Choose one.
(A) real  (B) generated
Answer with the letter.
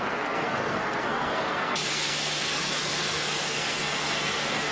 B